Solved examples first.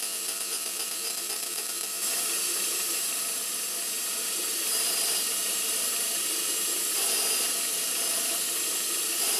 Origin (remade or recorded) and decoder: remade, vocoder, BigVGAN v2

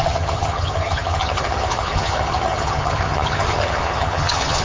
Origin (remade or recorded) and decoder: remade, vocoder, HiFi-GAN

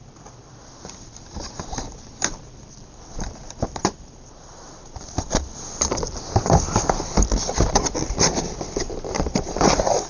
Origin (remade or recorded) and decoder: remade, vocoder, BigVGAN v2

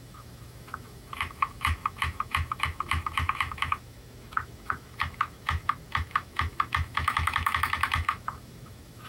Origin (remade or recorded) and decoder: remade, autoencoder, DAC-VAE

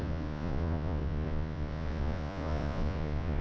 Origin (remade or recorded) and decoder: remade, vocoder, Vocos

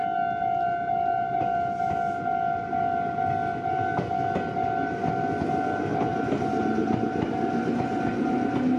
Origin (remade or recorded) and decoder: recorded